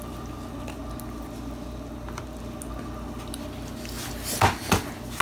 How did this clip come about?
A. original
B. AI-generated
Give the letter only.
A